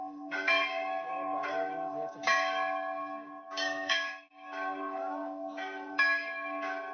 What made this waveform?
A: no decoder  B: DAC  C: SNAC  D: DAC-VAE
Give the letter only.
B